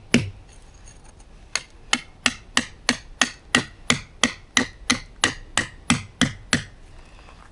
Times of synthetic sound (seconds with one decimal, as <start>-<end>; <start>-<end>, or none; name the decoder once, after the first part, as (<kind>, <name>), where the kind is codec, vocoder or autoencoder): none